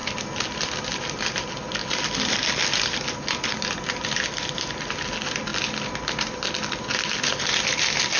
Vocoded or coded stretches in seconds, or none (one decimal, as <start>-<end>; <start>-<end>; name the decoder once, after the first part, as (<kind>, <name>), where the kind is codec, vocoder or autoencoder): none